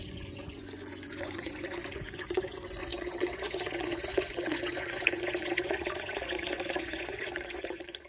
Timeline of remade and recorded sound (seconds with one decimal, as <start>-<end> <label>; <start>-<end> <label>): 0.0-8.1 remade